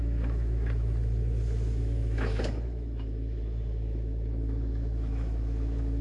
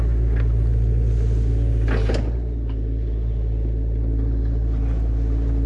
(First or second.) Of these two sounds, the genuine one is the second